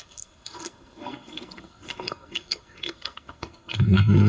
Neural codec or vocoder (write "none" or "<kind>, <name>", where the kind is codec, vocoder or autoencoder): codec, SNAC